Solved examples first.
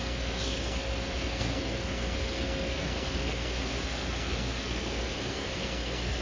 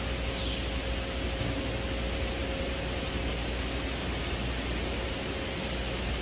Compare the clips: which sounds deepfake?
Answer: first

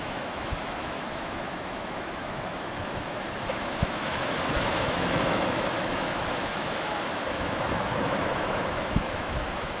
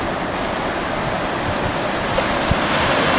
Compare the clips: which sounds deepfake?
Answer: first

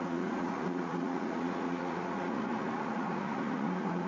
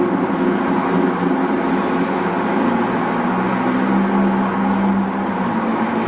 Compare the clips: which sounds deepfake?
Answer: first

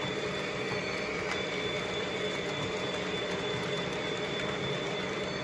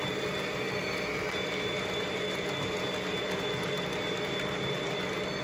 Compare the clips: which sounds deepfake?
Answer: first